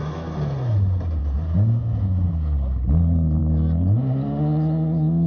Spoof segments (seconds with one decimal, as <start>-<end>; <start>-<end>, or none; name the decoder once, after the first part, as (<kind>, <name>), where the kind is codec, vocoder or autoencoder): none